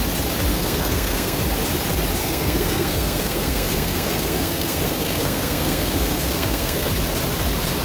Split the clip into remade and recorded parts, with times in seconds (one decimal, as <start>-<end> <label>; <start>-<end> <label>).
0.0-0.5 recorded; 0.5-1.4 remade; 1.4-2.2 recorded; 2.2-6.9 remade; 6.9-7.8 recorded